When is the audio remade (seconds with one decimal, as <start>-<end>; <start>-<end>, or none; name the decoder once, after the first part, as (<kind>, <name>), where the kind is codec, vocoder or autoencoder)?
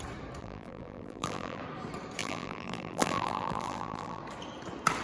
0.4-1.6 (vocoder, BigVGAN v2); 2.2-4.2